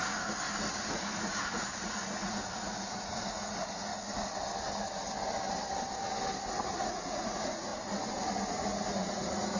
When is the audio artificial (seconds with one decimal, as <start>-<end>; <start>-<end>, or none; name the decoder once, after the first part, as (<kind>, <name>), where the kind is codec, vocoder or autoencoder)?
0.7-3.9 (vocoder, Vocos); 6.5-7.7; 8.5-9.6